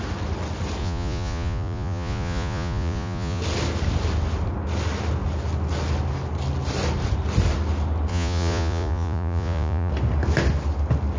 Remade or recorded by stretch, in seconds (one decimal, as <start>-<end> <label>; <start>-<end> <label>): 0.0-0.8 recorded; 0.8-3.4 remade; 3.4-8.1 recorded; 8.1-9.9 remade; 9.9-11.2 recorded